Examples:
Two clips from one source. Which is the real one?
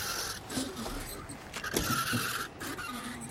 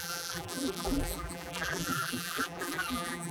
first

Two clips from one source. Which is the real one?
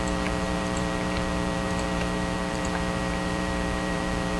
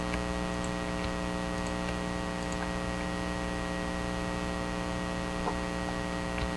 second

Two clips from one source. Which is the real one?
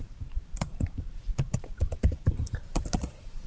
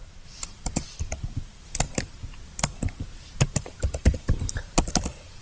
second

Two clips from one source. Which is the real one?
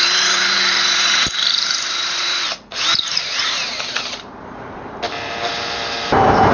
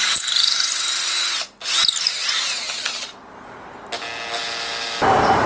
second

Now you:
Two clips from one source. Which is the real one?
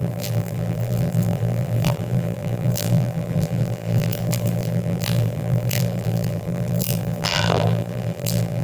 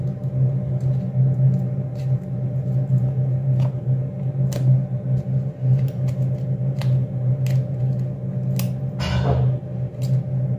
second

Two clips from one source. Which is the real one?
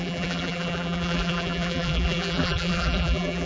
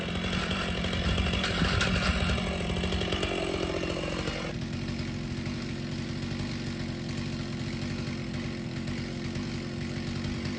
second